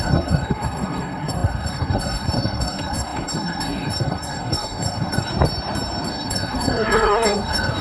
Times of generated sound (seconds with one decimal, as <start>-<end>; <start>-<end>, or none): 0.0-5.3; 6.1-7.8